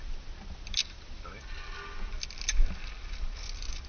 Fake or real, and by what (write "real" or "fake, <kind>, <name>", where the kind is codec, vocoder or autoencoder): real